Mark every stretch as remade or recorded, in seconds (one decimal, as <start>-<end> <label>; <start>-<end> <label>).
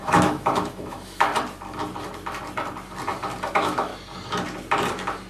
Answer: 0.0-1.3 remade; 1.3-3.5 recorded; 3.5-3.9 remade; 3.9-5.3 recorded